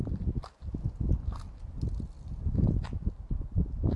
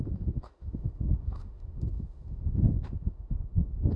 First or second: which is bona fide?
first